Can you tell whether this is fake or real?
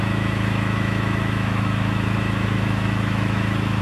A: fake